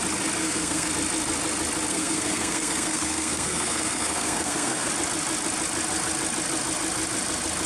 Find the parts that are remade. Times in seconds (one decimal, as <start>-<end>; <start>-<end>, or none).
0.4-0.9; 1.9-4.9

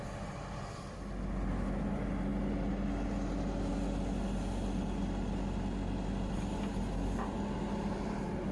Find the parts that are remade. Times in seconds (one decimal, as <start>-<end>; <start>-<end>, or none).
none